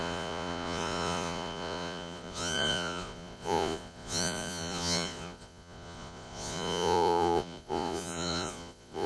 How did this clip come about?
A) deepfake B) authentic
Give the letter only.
A